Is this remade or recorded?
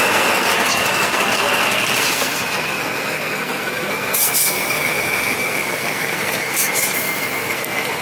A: remade